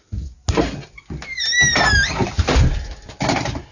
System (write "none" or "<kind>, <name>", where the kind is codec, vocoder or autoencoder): none